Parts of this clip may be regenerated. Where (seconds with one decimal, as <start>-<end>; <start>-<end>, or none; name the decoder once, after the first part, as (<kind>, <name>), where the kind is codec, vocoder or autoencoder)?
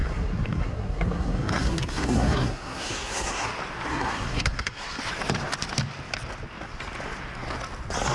0.0-3.5 (codec, SNAC); 3.9-5.0